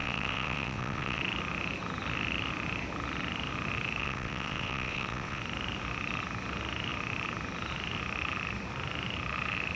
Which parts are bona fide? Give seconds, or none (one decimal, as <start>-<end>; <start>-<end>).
1.2-4.0; 5.4-9.8